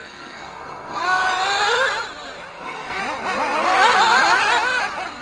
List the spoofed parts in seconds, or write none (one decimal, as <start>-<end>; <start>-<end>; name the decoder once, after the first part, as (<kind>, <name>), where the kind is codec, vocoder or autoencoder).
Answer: 0.0-1.2 (codec, SNAC); 2.5-3.0